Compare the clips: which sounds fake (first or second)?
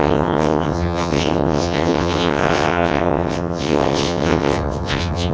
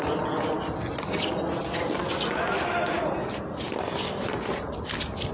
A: first